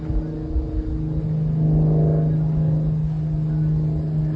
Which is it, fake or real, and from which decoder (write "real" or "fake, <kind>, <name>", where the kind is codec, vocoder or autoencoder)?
real